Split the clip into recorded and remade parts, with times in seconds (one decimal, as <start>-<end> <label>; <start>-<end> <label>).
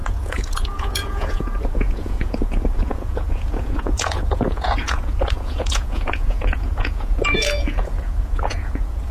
0.0-9.1 remade